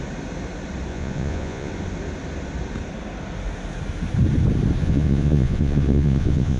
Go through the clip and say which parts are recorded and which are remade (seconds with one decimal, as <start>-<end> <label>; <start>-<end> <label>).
0.0-0.9 recorded; 0.9-1.7 remade; 1.7-4.8 recorded; 4.8-6.6 remade